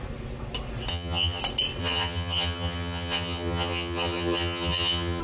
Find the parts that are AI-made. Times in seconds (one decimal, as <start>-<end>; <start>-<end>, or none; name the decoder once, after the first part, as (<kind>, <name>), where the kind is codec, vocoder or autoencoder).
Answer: 0.9-1.4 (vocoder, HiFi-GAN); 1.8-5.2